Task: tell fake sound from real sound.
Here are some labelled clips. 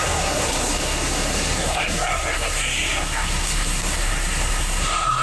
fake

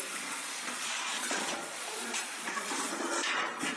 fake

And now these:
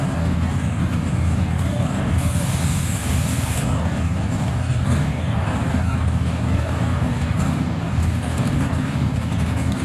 fake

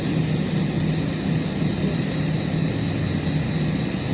real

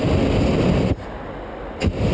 real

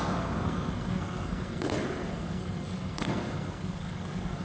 fake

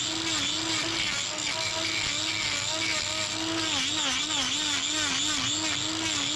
real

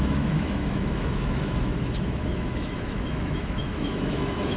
fake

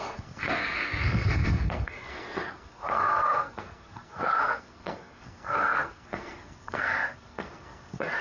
fake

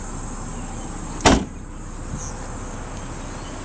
real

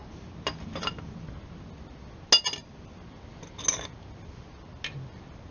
real